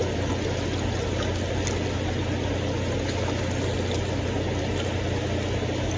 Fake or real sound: real